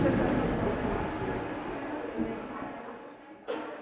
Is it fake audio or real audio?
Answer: real